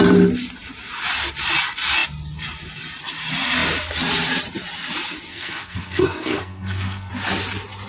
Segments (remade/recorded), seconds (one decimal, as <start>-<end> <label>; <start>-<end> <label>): 0.0-5.3 recorded; 5.3-7.1 remade; 7.1-7.9 recorded